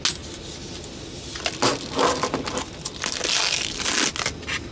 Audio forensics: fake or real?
real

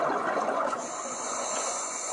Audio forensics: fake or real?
fake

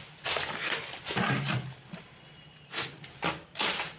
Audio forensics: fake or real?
real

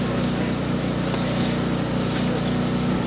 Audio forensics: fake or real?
real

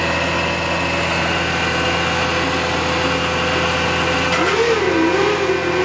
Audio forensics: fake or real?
real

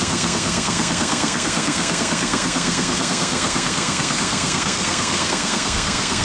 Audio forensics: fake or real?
fake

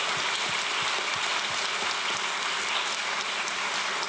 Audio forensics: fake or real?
real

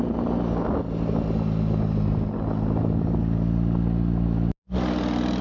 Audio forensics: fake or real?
real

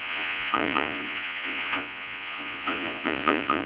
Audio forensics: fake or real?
fake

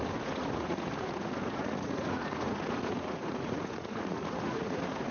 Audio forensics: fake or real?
fake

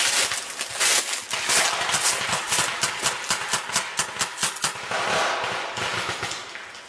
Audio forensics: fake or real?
real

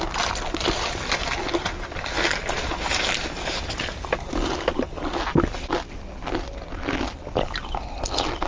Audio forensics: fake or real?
real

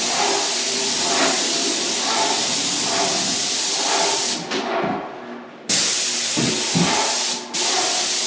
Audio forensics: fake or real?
real